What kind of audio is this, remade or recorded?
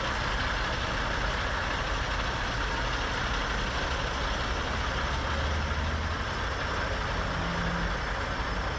recorded